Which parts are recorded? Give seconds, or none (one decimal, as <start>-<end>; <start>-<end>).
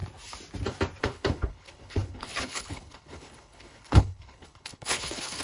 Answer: 0.0-1.0